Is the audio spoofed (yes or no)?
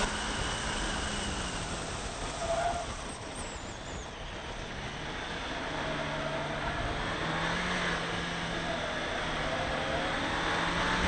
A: no